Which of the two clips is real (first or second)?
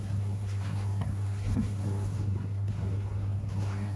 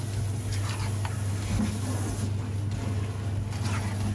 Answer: second